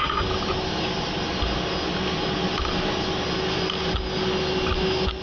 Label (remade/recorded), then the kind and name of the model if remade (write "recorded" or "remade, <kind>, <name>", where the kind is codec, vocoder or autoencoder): recorded